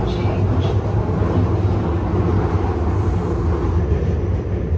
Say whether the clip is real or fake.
real